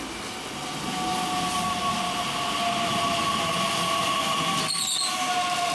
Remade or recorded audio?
recorded